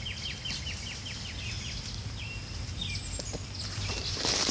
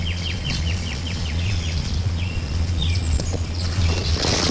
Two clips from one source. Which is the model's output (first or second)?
second